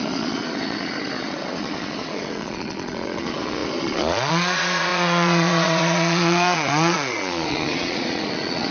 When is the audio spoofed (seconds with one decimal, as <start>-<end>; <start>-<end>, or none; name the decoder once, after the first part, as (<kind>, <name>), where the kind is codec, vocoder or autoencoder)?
0.0-8.7 (vocoder, Vocos)